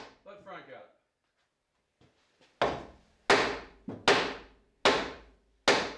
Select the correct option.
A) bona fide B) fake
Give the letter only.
A